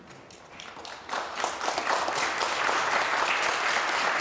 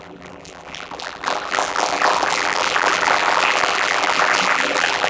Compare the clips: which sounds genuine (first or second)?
first